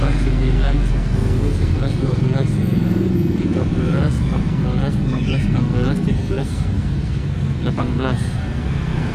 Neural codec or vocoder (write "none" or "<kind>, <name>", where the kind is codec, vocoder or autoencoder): codec, SNAC